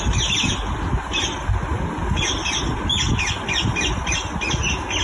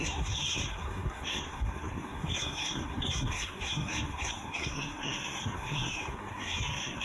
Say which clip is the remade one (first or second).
second